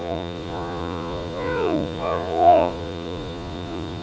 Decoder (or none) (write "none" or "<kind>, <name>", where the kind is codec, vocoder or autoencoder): vocoder, Vocos